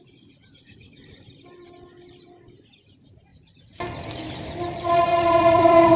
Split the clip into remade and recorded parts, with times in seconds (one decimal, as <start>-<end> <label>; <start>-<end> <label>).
0.0-3.3 recorded; 3.3-4.2 remade; 4.2-5.1 recorded; 5.1-6.0 remade